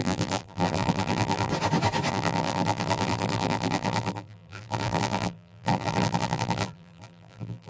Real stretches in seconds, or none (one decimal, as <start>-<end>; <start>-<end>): 1.5-2.1